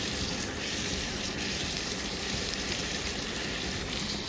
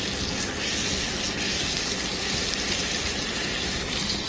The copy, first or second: first